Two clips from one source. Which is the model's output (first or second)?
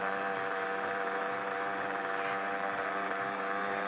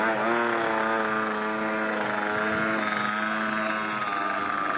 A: first